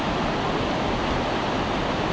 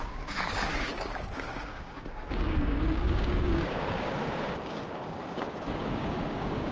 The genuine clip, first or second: first